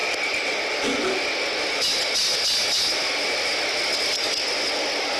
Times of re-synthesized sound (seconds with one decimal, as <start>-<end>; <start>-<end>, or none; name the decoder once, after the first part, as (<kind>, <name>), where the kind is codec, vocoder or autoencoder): none